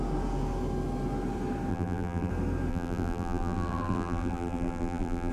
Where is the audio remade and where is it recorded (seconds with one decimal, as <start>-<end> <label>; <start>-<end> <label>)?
0.0-1.7 recorded; 1.7-2.3 remade; 2.3-2.7 recorded; 2.7-5.3 remade